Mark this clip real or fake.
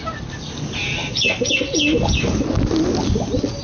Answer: real